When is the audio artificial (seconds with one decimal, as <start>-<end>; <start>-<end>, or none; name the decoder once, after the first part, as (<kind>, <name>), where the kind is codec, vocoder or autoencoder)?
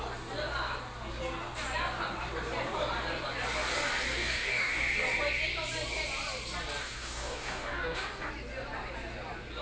4.1-4.8 (codec, DAC); 6.8-8.3